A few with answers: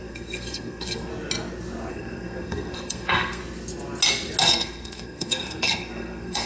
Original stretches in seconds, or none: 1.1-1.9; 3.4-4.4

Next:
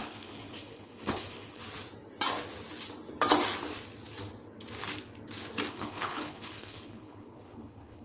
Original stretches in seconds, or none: 1.6-5.7

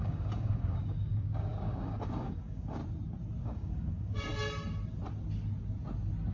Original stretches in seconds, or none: 2.8-3.4; 4.3-6.3